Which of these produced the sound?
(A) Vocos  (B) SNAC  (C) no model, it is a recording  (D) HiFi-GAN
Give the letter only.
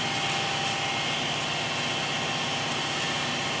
C